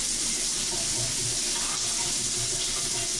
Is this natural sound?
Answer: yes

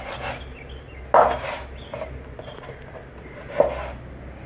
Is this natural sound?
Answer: yes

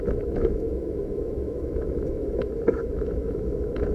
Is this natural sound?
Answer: no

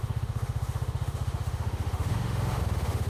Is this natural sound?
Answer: no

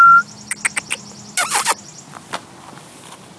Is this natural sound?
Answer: yes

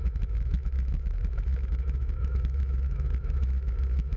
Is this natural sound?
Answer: no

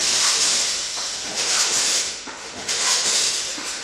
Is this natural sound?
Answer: no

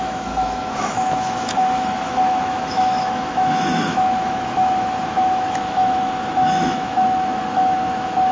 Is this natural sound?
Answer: no